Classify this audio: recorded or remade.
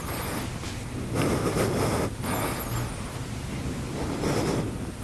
recorded